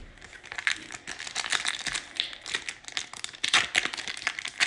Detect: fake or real real